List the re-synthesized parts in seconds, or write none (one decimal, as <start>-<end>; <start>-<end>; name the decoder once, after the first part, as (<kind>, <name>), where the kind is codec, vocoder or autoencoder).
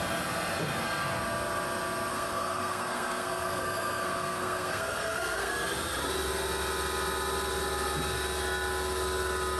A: 2.1-5.5 (codec, SNAC)